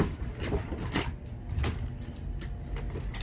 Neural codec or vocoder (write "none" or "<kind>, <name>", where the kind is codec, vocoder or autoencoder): none